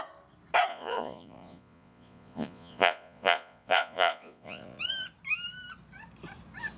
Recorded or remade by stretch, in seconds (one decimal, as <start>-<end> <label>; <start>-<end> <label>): 0.0-0.7 recorded; 0.7-4.8 remade; 4.8-6.8 recorded